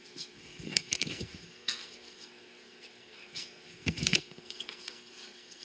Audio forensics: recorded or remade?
remade